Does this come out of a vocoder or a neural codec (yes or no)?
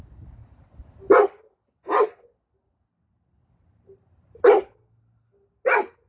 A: no